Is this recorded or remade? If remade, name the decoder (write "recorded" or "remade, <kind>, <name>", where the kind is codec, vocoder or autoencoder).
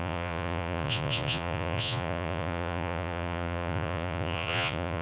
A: remade, vocoder, Vocos